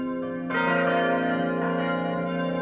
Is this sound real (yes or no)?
yes